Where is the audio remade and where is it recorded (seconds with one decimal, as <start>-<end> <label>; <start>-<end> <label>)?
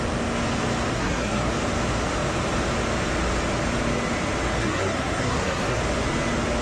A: 0.0-0.9 recorded; 0.9-1.5 remade; 1.5-4.6 recorded; 4.6-5.8 remade; 5.8-6.6 recorded